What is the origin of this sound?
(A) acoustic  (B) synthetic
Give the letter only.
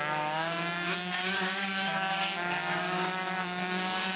B